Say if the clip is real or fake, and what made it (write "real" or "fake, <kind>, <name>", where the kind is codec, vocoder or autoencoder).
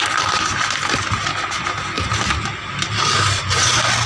real